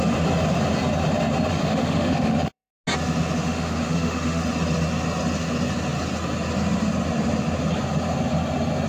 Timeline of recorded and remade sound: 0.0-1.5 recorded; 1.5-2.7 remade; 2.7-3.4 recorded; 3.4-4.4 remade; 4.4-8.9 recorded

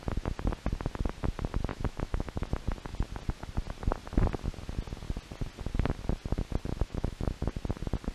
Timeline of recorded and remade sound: 0.0-1.7 recorded; 1.7-2.5 remade; 2.5-6.7 recorded; 6.7-7.3 remade; 7.3-8.1 recorded

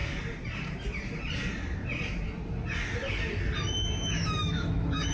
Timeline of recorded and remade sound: 0.0-3.8 recorded; 3.8-5.1 remade